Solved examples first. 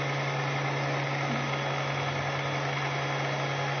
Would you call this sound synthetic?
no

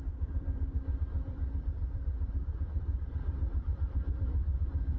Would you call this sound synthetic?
yes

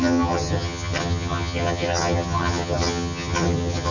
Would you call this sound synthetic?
yes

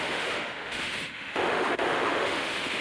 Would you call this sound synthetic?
yes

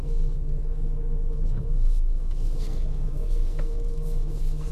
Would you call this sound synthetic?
yes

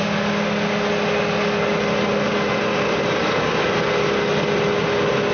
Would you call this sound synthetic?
no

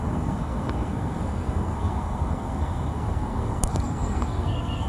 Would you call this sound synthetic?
yes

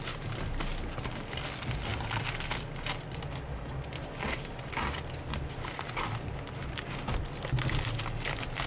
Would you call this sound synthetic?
no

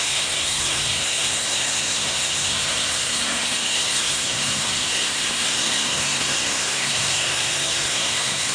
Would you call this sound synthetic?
yes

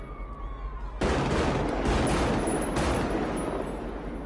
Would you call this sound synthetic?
no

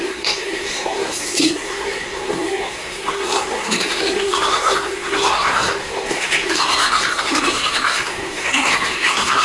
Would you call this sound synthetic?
yes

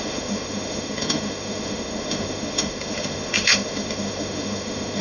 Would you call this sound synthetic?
yes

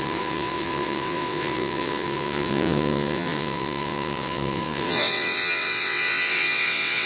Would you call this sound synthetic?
yes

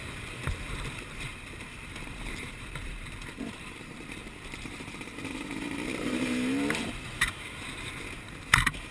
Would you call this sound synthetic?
yes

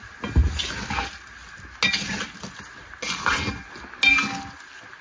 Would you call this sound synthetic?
no